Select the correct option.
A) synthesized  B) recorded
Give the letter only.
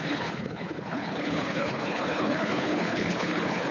A